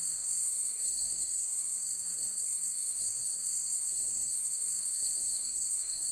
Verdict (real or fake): fake